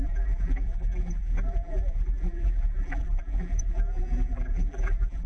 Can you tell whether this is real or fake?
fake